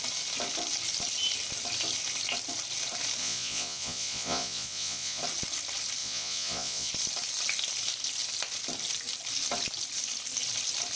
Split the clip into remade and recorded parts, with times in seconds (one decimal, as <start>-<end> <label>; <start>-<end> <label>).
0.0-3.2 recorded; 3.2-5.2 remade; 5.2-6.0 recorded; 6.0-6.9 remade; 6.9-11.0 recorded